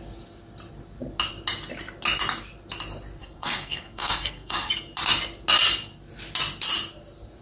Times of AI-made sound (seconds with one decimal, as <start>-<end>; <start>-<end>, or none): 3.2-4.7